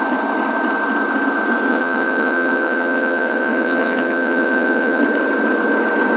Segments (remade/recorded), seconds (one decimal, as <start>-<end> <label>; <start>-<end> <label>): 0.0-1.7 recorded; 1.7-5.0 remade; 5.0-6.2 recorded